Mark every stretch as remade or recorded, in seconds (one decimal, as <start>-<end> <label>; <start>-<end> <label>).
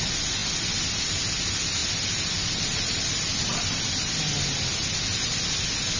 0.0-6.0 recorded